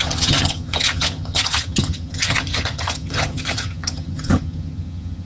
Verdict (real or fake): fake